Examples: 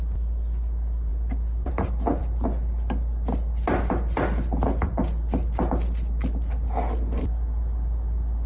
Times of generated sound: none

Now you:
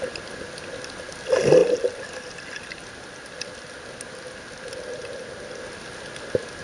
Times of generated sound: none

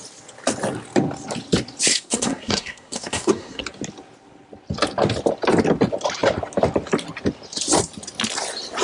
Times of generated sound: 1.9-3.6 (codec, SNAC)

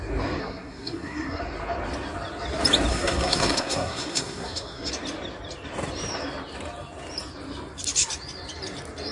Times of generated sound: 0.4-1.4 (codec, SNAC); 2.9-4.9